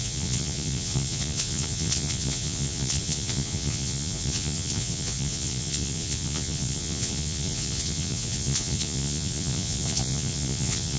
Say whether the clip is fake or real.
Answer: fake